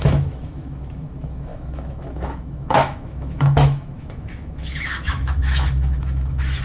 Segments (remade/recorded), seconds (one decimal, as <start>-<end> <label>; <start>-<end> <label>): 0.0-6.6 remade